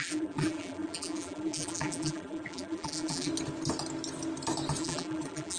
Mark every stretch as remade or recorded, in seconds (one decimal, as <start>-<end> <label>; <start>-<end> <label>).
0.0-3.3 remade; 3.3-4.8 recorded; 4.8-5.6 remade